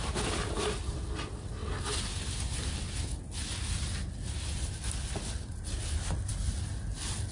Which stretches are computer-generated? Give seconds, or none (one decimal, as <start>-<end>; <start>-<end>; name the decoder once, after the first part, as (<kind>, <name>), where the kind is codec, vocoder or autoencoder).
none